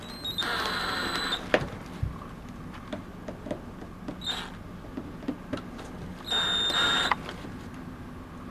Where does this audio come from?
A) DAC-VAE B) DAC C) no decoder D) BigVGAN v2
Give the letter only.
C